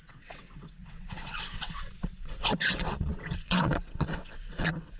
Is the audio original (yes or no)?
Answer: no